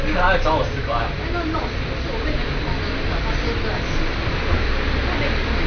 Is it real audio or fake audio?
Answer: real